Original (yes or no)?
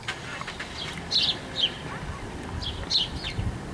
yes